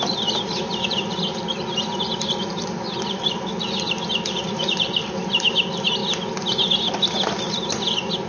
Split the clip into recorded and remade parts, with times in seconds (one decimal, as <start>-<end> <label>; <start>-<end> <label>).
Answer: 0.0-6.0 remade; 6.0-7.7 recorded; 7.7-8.3 remade